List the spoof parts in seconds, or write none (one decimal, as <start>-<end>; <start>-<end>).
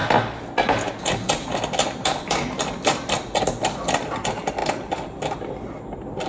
none